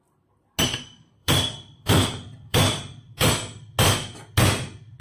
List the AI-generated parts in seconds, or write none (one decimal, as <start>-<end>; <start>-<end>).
1.2-3.3